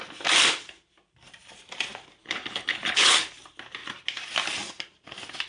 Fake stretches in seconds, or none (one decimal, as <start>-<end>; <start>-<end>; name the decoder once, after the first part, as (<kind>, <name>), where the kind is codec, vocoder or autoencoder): 2.2-3.3 (codec, HILCodec)